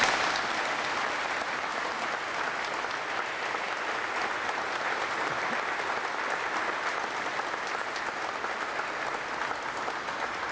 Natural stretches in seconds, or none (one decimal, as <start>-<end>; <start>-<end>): 0.0-10.5